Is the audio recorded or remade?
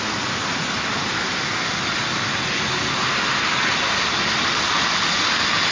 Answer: recorded